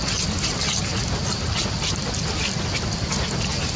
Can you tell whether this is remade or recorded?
recorded